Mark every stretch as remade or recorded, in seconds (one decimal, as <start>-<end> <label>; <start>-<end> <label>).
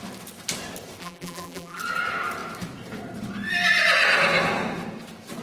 0.0-1.0 recorded; 1.0-1.8 remade; 1.8-5.4 recorded